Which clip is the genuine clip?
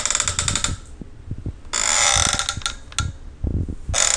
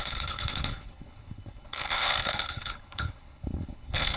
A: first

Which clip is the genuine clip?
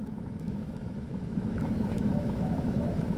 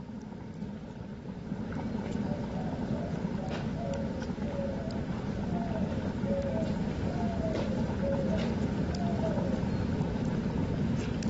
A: second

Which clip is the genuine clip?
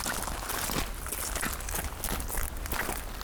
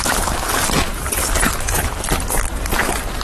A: first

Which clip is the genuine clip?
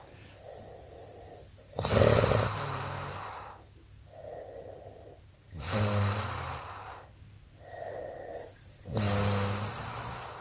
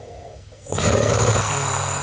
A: first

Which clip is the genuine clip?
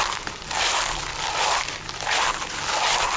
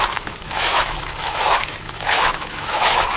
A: first